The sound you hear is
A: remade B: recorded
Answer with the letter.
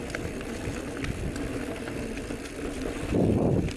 B